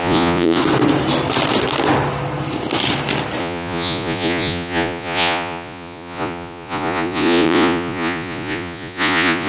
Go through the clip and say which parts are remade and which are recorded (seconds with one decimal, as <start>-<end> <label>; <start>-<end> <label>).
0.0-0.6 remade; 0.6-3.4 recorded; 3.4-9.5 remade